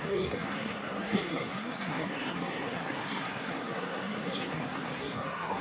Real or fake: fake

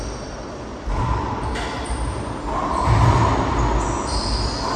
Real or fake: real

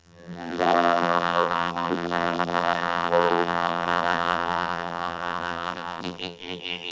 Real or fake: fake